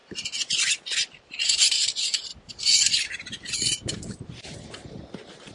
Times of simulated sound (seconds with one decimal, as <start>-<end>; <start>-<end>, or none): 1.1-5.5